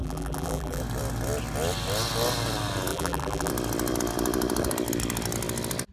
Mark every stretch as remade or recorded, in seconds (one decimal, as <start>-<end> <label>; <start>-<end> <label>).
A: 0.0-0.8 remade; 0.8-2.9 recorded; 2.9-3.5 remade; 3.5-5.9 recorded